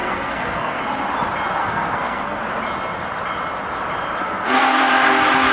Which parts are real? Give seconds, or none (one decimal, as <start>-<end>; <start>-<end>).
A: 0.8-1.6; 2.4-4.2; 4.8-5.5